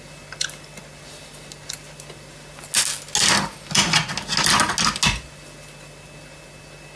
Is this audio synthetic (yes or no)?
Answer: no